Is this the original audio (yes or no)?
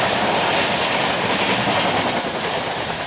yes